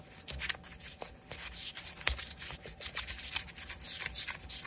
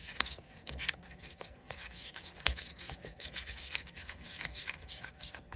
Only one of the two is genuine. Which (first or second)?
first